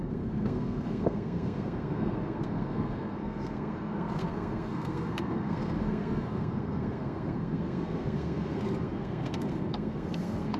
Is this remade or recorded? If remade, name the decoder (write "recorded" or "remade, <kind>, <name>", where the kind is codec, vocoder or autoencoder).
remade, codec, SNAC